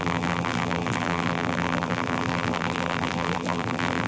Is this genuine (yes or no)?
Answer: no